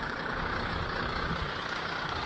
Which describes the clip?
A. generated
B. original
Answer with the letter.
A